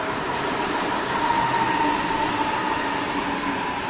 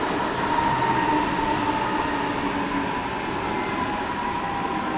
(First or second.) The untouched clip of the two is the second